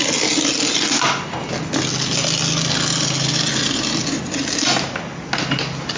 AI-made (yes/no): no